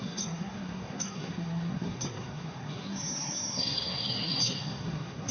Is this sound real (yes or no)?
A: no